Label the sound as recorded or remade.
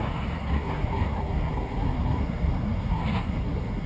remade